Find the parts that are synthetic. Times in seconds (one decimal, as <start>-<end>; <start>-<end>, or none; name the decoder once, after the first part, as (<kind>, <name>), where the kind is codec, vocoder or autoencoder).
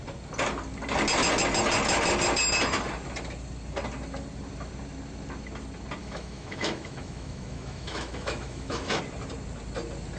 6.0-9.0 (autoencoder, DAC-VAE)